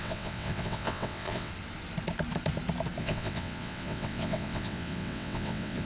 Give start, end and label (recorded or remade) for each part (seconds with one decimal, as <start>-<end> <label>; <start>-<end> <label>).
0.0-1.5 remade; 1.5-3.0 recorded; 3.0-5.8 remade

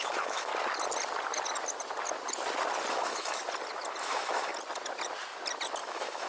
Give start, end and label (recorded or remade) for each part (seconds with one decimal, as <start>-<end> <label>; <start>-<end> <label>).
0.0-0.5 remade; 0.5-2.9 recorded; 2.9-3.4 remade; 3.4-4.0 recorded; 4.0-4.5 remade; 4.5-5.8 recorded; 5.8-6.3 remade